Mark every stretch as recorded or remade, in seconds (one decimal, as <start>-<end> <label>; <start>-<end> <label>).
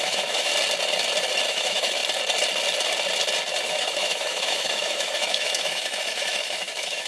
0.0-0.5 remade; 0.5-1.5 recorded; 1.5-2.0 remade; 2.0-3.6 recorded; 3.6-7.1 remade